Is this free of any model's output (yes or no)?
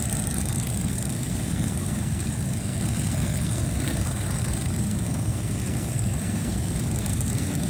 no